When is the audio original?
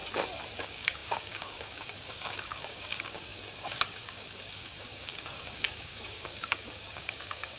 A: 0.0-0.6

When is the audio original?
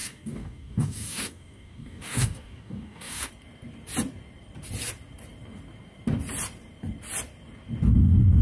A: 3.3-8.4